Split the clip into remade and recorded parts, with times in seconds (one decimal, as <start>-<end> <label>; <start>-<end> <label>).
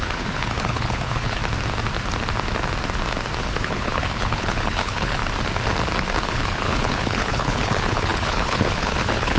0.0-1.4 remade; 1.4-3.4 recorded; 3.4-5.2 remade; 5.2-6.2 recorded; 6.2-9.4 remade